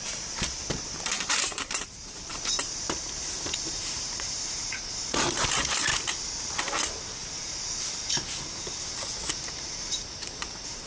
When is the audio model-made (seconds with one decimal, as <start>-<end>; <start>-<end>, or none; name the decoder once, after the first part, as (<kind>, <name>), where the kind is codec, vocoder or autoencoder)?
0.0-5.9 (vocoder, BigVGAN v2); 9.3-10.9